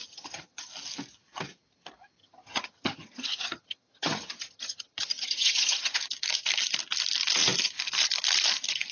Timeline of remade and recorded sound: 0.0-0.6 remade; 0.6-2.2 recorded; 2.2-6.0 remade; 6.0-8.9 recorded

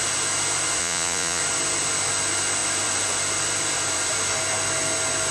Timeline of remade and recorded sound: 0.0-0.8 recorded; 0.8-1.4 remade; 1.4-5.3 recorded

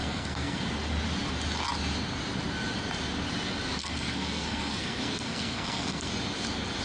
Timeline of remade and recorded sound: 0.0-0.6 remade; 0.6-3.8 recorded; 3.8-6.1 remade; 6.1-6.8 recorded

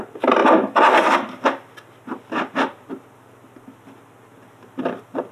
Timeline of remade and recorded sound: 0.0-5.3 recorded

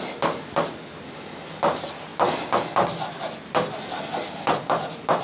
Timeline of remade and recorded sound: 0.0-5.2 recorded

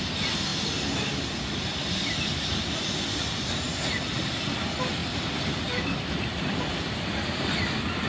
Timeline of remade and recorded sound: 0.0-6.3 recorded; 6.3-8.1 remade